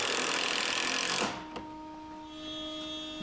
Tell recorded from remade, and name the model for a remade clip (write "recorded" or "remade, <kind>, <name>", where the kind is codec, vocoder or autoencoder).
recorded